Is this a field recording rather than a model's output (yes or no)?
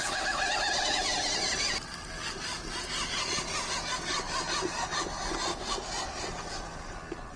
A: yes